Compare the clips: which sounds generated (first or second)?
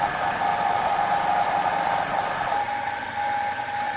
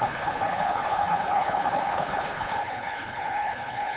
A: second